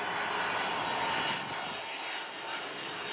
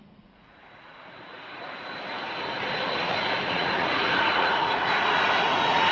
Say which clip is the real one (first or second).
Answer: first